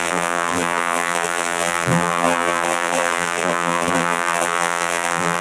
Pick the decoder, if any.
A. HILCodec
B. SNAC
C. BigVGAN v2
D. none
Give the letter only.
C